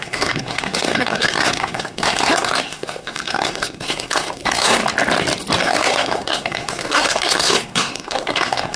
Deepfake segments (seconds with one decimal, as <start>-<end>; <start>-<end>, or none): 0.0-4.8; 5.6-8.8